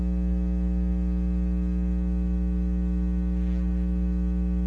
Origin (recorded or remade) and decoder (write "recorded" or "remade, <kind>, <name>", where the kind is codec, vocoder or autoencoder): recorded